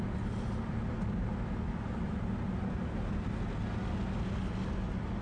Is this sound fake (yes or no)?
no